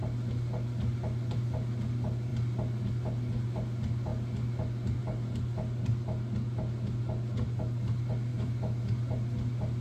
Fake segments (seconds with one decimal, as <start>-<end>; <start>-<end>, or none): 8.3-8.8